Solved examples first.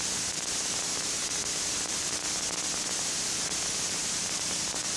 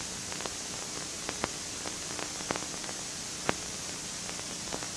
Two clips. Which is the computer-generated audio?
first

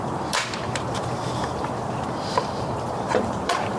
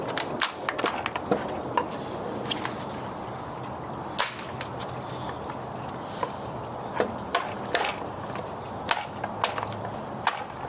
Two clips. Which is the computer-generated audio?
first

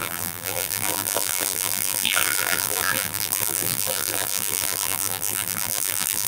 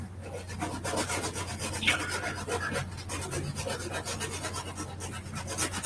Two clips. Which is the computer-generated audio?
first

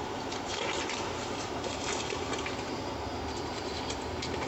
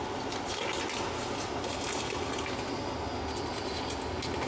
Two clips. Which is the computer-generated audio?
first